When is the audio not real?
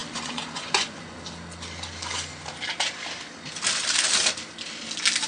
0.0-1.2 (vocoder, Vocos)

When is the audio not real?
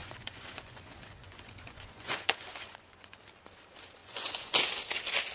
0.0-3.2 (vocoder, Vocos); 4.0-4.6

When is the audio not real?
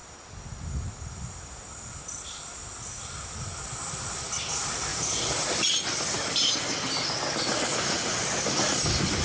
none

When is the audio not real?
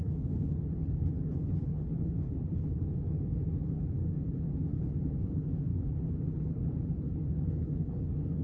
0.0-8.4 (codec, HILCodec)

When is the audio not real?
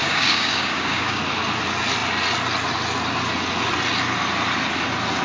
0.0-1.2 (codec, DAC)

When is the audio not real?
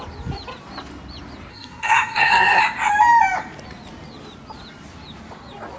1.5-2.6 (codec, SNAC)